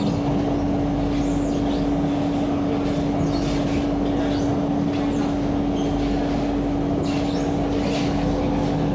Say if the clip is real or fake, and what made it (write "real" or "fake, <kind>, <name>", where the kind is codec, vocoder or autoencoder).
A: real